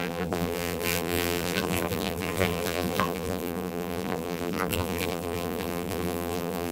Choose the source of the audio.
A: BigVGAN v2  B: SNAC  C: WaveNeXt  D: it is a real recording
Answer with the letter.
A